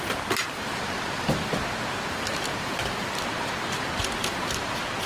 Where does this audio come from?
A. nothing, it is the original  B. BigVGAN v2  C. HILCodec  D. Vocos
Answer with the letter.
A